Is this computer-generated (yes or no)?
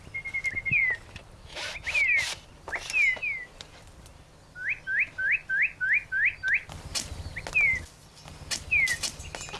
no